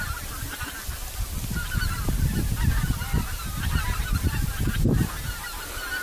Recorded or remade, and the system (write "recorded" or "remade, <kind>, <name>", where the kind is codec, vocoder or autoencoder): recorded